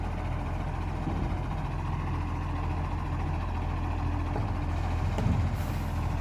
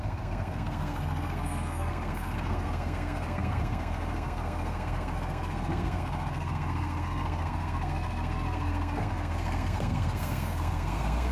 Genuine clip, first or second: first